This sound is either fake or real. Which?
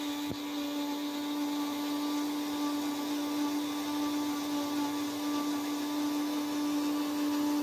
real